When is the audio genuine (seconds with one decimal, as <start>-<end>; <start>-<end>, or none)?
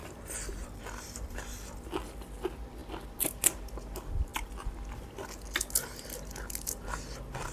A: 0.0-7.5